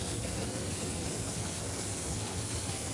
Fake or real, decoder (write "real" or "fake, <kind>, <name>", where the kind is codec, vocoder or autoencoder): fake, codec, SNAC